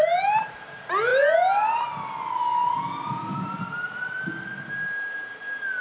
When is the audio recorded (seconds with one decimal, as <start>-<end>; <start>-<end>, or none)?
0.0-5.8